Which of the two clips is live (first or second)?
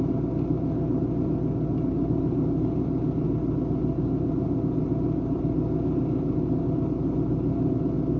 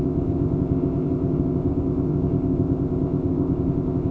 first